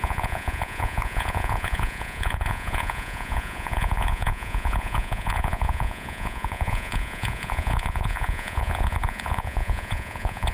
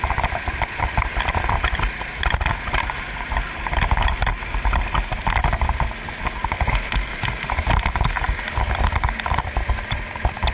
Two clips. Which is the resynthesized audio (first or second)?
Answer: first